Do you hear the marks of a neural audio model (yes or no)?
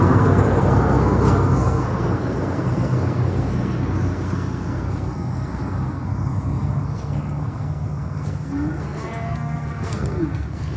yes